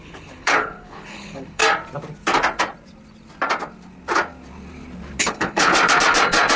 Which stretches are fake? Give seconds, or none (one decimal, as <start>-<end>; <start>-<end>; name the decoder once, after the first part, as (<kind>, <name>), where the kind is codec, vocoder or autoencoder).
0.0-1.6 (codec, HILCodec); 5.2-5.7